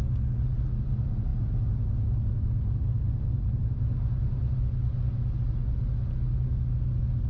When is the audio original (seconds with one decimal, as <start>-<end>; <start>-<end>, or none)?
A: 0.0-7.3